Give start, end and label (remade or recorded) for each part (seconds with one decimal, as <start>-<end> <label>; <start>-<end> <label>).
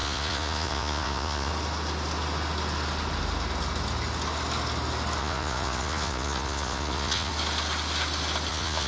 0.0-1.5 remade; 1.5-5.2 recorded; 5.2-7.3 remade; 7.3-8.5 recorded; 8.5-8.9 remade